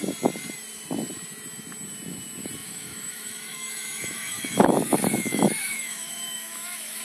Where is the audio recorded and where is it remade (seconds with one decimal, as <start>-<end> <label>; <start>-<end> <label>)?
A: 0.0-2.6 recorded; 2.6-7.0 remade